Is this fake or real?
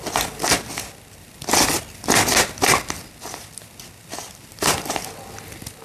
real